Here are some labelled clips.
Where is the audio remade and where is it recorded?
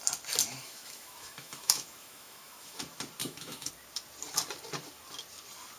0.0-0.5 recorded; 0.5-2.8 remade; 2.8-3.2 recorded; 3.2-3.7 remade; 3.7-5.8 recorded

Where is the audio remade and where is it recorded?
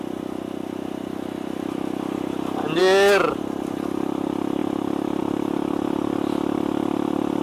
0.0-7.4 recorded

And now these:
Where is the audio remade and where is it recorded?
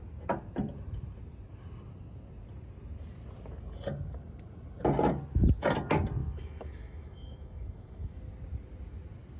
0.0-6.2 recorded; 6.2-8.2 remade; 8.2-9.4 recorded